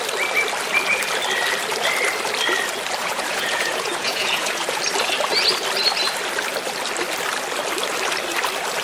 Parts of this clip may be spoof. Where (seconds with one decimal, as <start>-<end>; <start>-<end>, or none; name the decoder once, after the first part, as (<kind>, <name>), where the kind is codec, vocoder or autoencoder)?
3.0-4.8 (vocoder, Vocos)

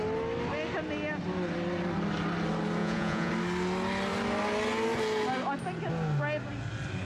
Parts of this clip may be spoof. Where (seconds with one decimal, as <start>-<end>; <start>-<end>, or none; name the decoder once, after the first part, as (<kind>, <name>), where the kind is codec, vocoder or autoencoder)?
2.8-3.3 (vocoder, Vocos)

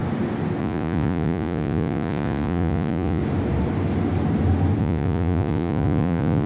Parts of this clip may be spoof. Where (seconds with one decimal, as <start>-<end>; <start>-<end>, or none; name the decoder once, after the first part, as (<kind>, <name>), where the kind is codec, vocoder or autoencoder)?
0.6-3.2 (vocoder, Vocos); 4.8-6.5

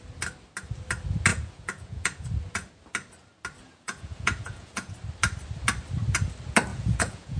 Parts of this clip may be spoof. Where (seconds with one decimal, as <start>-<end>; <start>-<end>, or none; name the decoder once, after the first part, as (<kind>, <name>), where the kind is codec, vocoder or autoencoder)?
1.3-2.8 (vocoder, Vocos); 3.6-5.0; 6.7-7.4

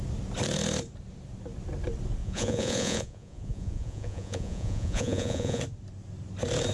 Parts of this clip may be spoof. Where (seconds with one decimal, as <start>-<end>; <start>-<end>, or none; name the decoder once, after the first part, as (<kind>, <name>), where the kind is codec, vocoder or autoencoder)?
2.2-5.6 (vocoder, Vocos)

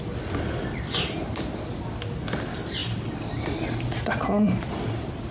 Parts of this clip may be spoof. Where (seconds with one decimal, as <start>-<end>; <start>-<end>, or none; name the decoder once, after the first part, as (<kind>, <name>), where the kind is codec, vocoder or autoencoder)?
none